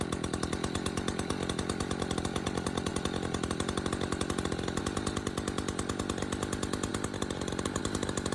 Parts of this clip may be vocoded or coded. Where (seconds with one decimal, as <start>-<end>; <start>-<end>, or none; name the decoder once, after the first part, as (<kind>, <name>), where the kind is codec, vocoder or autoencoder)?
none